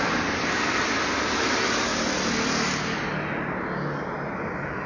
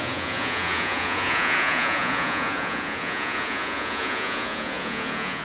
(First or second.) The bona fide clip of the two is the first